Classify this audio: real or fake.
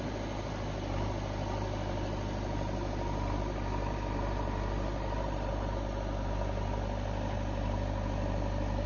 real